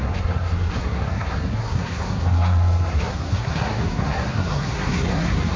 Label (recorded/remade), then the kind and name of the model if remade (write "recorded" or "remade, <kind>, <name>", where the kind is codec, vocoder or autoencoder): remade, codec, SNAC